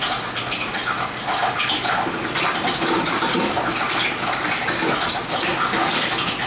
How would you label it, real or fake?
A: real